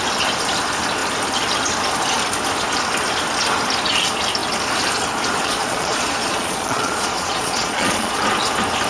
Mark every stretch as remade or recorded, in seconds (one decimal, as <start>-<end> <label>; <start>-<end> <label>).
0.0-5.4 recorded; 5.4-8.2 remade; 8.2-8.9 recorded